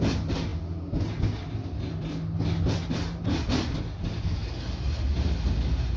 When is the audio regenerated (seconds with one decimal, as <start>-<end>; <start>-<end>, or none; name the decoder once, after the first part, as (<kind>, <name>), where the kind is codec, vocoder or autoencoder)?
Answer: none